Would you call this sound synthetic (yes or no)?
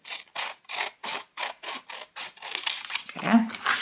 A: no